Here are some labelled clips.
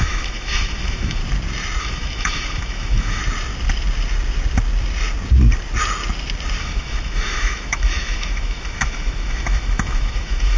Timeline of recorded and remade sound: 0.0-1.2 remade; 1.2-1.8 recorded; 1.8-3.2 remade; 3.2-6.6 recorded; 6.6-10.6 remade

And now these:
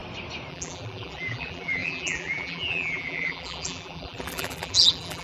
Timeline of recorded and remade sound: 0.0-0.5 recorded; 0.5-5.2 remade

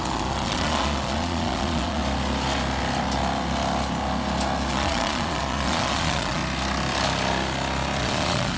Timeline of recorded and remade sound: 0.0-2.0 remade; 2.0-4.7 recorded; 4.7-6.4 remade; 6.4-8.0 recorded; 8.0-8.6 remade

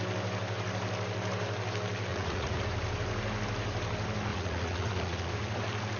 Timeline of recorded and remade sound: 0.0-2.1 recorded; 2.1-2.6 remade; 2.6-4.3 recorded; 4.3-5.3 remade; 5.3-6.0 recorded